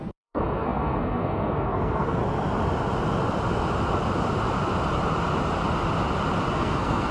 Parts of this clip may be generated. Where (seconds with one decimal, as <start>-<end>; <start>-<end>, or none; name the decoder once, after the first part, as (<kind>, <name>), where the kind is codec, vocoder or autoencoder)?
0.0-2.2 (codec, SNAC); 6.5-7.1